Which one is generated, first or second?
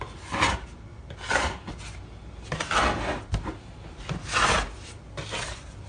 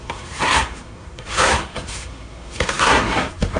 second